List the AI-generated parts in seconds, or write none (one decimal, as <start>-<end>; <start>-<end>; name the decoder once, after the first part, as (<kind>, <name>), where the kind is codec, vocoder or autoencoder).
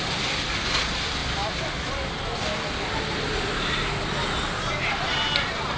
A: none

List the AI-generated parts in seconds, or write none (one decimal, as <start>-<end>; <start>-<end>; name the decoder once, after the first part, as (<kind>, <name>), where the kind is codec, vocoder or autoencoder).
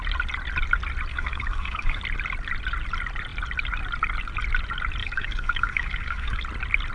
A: 1.1-2.0 (codec, DAC); 5.0-6.4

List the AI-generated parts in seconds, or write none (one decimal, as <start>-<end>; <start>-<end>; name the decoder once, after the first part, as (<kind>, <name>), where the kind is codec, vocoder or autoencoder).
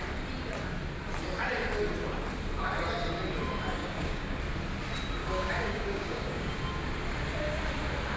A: 3.8-4.4 (codec, DAC); 5.2-6.5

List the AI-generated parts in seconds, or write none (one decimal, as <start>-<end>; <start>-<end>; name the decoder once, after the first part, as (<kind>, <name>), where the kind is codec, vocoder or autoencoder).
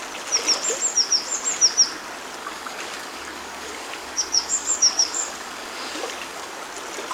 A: 2.4-6.6 (codec, DAC)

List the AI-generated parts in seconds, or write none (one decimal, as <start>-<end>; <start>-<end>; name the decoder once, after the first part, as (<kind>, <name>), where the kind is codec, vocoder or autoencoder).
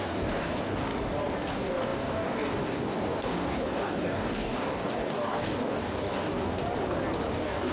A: 0.0-0.9 (codec, DAC); 1.5-6.6; 7.3-7.7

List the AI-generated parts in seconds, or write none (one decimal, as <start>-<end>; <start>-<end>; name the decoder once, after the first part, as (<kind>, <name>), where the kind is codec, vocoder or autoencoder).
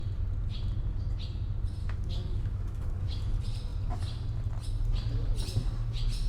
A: 1.8-3.2 (codec, DAC)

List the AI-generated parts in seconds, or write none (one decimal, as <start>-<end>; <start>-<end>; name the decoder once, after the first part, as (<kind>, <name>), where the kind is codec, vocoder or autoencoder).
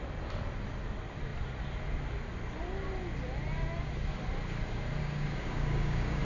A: 5.0-6.2 (codec, DAC)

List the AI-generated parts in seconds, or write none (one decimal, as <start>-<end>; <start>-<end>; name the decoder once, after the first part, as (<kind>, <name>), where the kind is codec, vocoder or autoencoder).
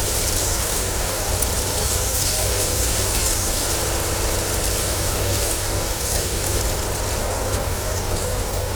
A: 0.4-1.3 (codec, DAC); 1.8-3.7; 4.8-6.6; 7.2-8.8